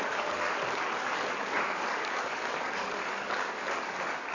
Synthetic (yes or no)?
yes